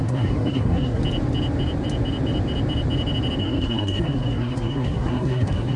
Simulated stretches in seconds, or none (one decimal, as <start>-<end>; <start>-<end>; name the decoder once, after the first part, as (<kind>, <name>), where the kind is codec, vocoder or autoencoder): 0.0-1.0 (codec, SNAC); 3.4-5.8